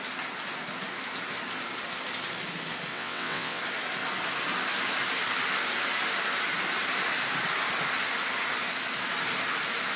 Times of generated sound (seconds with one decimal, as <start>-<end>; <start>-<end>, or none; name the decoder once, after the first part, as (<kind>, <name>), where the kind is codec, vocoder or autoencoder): 2.9-3.6 (vocoder, WaveNeXt)